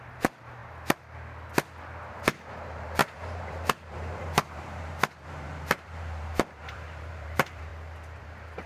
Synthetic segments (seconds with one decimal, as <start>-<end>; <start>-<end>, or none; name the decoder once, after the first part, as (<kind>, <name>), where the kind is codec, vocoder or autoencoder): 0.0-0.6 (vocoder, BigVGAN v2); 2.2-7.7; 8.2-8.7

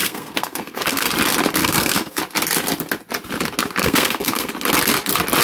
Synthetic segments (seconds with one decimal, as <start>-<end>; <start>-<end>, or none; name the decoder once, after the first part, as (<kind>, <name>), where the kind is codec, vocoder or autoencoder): 0.0-1.1 (codec, SNAC); 1.6-2.2; 3.8-4.5

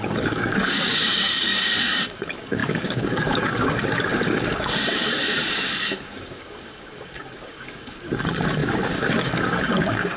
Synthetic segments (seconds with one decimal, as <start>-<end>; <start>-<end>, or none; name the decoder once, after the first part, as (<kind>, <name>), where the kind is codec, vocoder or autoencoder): 0.0-10.2 (codec, DAC)

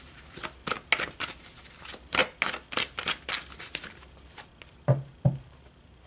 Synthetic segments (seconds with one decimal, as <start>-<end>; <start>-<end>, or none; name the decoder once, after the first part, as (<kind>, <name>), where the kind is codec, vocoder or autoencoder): 0.0-0.6 (vocoder, BigVGAN v2); 1.4-2.2; 5.4-6.1